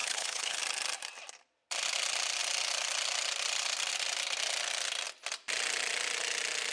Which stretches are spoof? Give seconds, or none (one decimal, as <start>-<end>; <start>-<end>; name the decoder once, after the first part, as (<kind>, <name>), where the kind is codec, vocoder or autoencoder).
0.0-0.6 (codec, HILCodec)